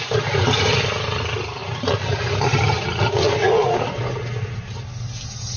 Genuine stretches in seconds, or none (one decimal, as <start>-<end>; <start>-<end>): 0.0-5.6